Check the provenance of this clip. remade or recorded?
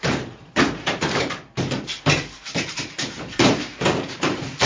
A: remade